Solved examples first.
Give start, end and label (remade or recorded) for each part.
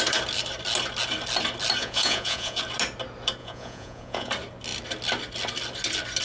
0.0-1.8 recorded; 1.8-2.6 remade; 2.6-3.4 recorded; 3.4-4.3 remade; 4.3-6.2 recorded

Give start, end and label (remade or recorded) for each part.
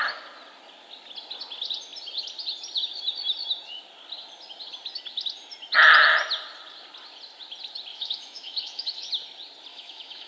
0.0-7.9 recorded; 7.9-9.1 remade; 9.1-9.7 recorded; 9.7-10.3 remade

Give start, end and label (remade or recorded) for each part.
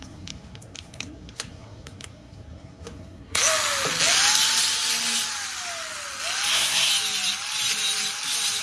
0.0-3.4 remade; 3.4-6.5 recorded; 6.5-6.9 remade; 6.9-8.6 recorded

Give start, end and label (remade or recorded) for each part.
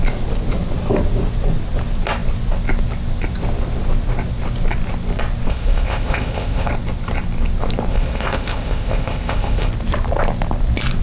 0.0-5.5 recorded; 5.5-6.7 remade; 6.7-7.9 recorded; 7.9-9.7 remade; 9.7-11.0 recorded